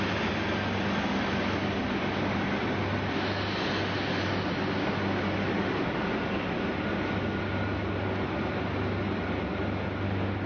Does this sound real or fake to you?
real